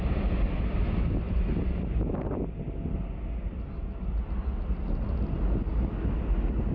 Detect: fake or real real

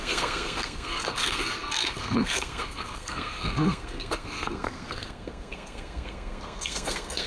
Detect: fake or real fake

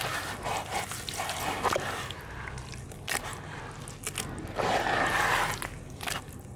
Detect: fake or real real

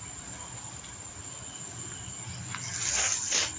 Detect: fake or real real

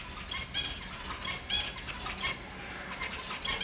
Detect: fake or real real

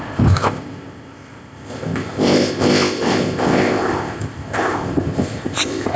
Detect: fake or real fake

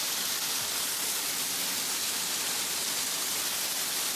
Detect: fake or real real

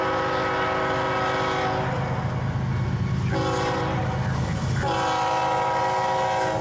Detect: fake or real real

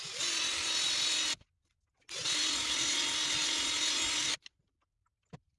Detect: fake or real real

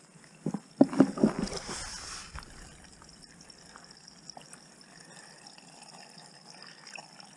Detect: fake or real real